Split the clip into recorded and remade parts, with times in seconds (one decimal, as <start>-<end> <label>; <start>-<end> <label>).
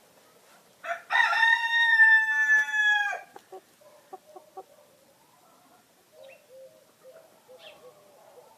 0.0-1.6 recorded; 1.6-2.1 remade; 2.1-8.6 recorded